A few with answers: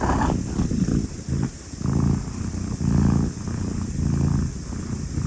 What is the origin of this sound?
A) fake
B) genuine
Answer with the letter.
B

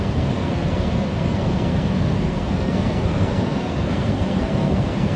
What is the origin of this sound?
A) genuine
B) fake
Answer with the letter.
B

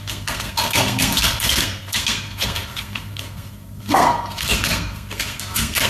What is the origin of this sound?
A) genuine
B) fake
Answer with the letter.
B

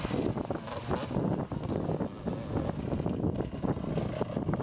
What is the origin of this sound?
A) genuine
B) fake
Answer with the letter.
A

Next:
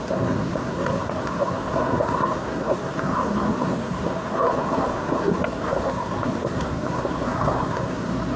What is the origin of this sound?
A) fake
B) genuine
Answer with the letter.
A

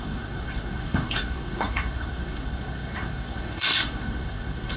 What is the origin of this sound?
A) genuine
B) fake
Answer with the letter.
B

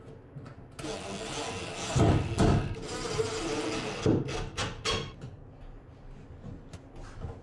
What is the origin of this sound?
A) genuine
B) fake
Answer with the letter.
A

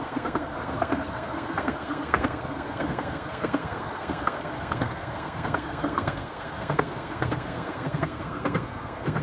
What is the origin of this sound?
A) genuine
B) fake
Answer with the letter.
B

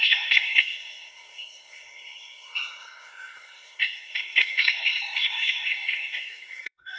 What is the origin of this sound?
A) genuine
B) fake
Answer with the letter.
B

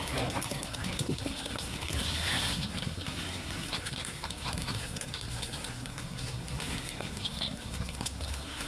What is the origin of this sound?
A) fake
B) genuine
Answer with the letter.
A